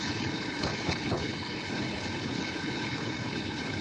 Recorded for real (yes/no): no